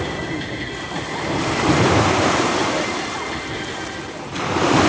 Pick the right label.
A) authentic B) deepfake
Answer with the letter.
A